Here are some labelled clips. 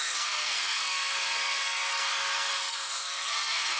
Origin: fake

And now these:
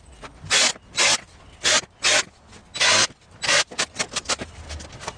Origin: real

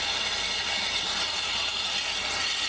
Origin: real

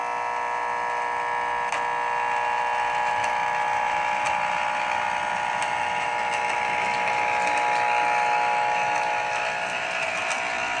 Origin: real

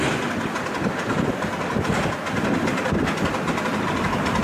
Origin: real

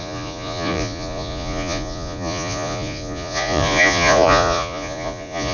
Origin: fake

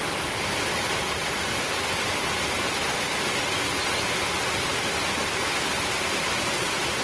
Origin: real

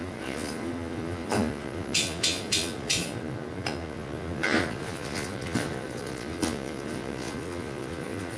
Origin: fake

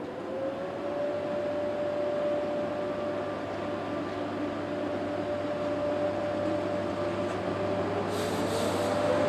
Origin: real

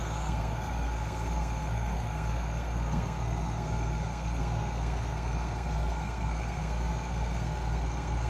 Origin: fake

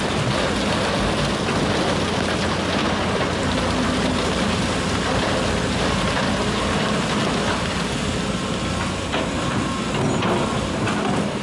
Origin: real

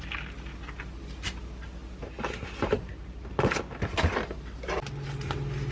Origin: real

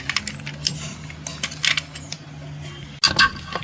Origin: real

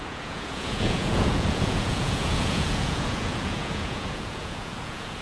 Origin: fake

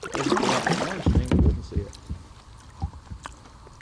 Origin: real